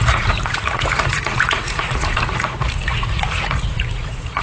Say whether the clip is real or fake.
fake